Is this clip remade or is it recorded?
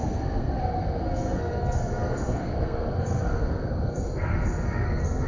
remade